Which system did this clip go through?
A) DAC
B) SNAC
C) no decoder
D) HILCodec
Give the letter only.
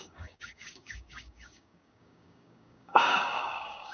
A